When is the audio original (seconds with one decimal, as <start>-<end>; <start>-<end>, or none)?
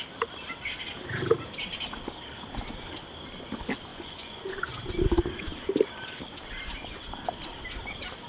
0.0-3.9; 4.5-8.3